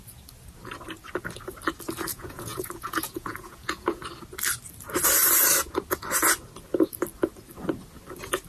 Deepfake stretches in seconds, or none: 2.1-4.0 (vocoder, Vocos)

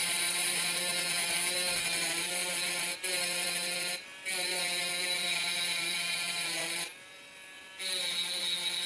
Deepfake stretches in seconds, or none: 0.0-0.9 (vocoder, BigVGAN v2)